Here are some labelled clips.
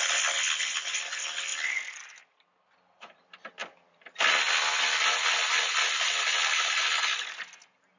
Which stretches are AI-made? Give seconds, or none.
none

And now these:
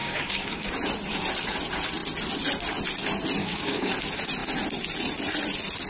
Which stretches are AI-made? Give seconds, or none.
0.0-0.7 (codec, DAC); 3.4-3.9

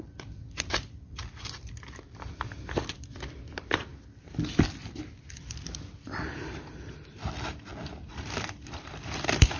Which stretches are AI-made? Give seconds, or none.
0.0-3.9 (vocoder, BigVGAN v2); 7.1-9.6

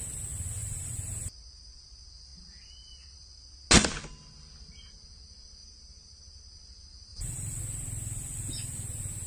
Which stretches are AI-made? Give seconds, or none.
0.6-1.3 (vocoder, BigVGAN v2); 5.6-6.4; 7.1-7.6

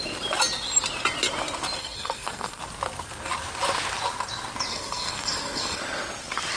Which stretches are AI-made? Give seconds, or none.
1.8-2.6 (codec, SNAC); 4.7-5.8

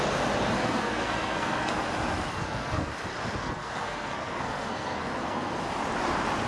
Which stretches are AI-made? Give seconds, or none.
0.6-1.7 (codec, SNAC); 2.3-2.9; 3.4-5.5

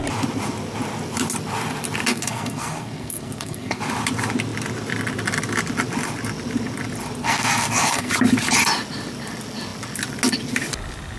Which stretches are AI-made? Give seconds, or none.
2.1-3.8 (codec, SNAC); 7.2-8.1